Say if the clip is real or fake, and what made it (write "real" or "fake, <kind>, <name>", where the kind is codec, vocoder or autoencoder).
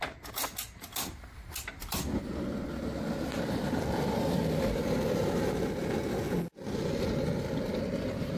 real